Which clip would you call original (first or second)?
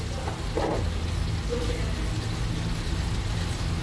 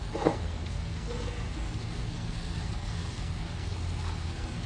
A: first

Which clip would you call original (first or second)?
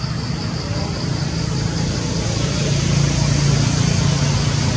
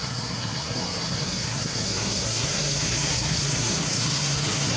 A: first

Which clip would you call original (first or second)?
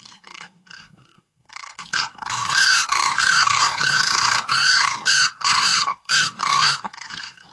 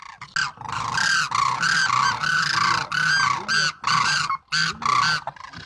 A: second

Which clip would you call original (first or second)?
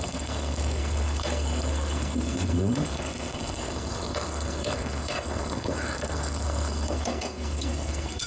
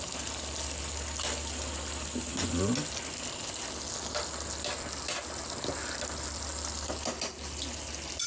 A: second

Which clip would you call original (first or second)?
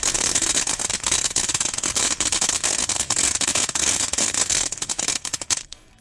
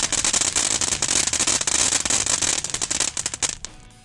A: second